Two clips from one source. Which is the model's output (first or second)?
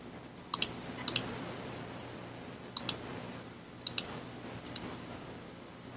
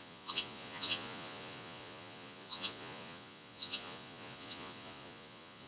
second